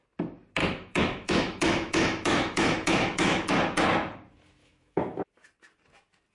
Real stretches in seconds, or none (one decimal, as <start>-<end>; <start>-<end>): 0.0-0.6; 3.5-4.6; 5.2-6.3